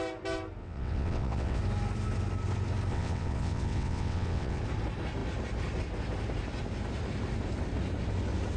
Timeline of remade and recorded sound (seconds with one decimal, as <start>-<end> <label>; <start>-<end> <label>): 0.0-0.6 recorded; 0.6-1.6 remade; 1.6-2.9 recorded; 2.9-4.6 remade; 4.6-8.6 recorded

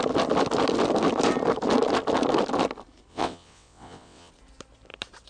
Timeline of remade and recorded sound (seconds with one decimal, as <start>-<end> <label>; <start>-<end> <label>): 0.0-3.1 recorded; 3.1-4.3 remade; 4.3-5.3 recorded